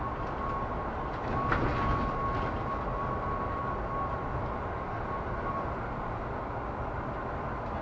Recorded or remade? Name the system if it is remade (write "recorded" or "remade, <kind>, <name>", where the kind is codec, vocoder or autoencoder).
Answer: recorded